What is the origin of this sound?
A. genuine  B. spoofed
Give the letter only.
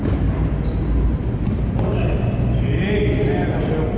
A